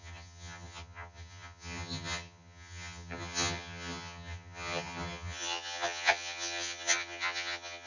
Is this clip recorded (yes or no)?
no